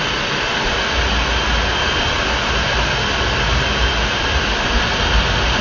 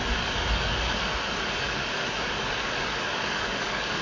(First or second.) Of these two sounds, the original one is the first